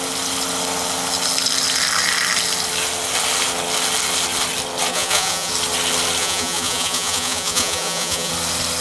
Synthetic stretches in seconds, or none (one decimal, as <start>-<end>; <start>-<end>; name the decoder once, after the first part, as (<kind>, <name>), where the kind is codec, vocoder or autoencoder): 4.9-5.5 (vocoder, Vocos); 6.2-8.3